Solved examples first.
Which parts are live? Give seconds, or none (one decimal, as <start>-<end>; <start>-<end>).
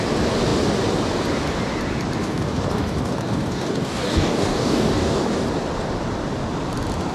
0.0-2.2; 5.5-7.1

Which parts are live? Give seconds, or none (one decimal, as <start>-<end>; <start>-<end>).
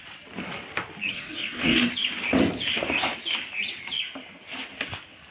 0.0-1.1; 1.9-5.3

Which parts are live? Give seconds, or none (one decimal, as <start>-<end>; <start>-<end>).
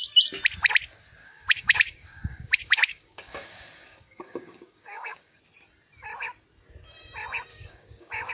0.0-1.2; 5.4-7.5